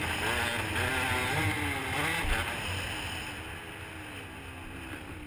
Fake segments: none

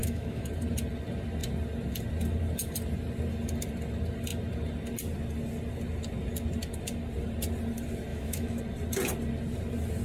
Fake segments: 0.0-0.5 (autoencoder, DAC-VAE); 8.1-8.6

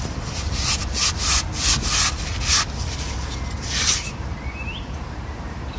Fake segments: none

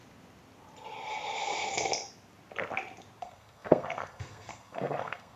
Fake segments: 3.2-5.4 (codec, SNAC)

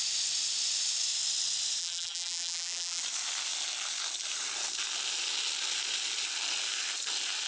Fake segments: 1.8-3.0 (vocoder, BigVGAN v2)

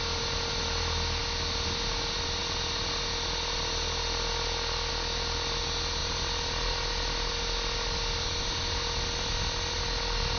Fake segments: none